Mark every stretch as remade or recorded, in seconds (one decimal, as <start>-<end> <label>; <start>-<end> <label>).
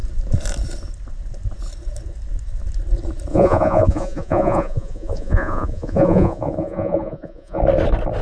0.0-3.3 recorded; 3.3-7.6 remade; 7.6-8.2 recorded